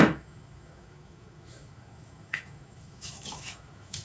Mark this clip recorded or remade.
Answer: remade